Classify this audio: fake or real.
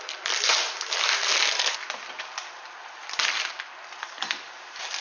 real